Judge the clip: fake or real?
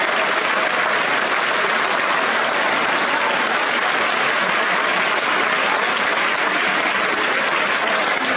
real